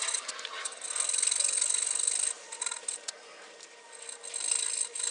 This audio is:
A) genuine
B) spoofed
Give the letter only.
A